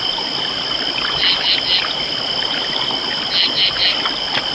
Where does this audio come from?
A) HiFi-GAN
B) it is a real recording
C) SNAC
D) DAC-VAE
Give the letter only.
B